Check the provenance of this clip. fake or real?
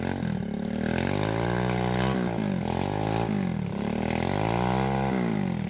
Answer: real